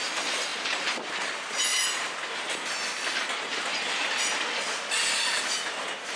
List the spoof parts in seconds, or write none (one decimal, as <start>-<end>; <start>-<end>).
0.5-1.1